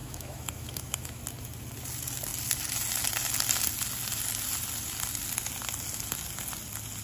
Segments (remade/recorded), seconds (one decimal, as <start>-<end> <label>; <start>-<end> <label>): 0.0-1.2 remade; 1.2-7.0 recorded